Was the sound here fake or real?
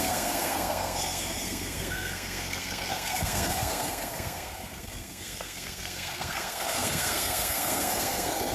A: fake